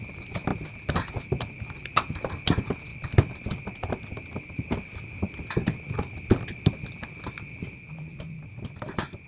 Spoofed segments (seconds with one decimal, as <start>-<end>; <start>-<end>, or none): none